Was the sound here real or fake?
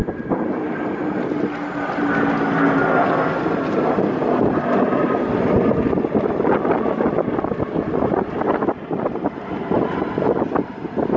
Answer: real